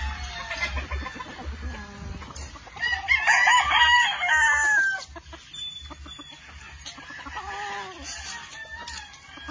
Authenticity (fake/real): real